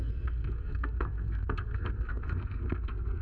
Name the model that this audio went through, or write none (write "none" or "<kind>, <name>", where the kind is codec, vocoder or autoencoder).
codec, SNAC